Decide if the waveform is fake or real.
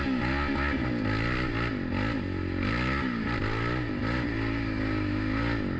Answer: real